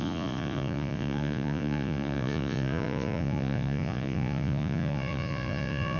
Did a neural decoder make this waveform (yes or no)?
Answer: yes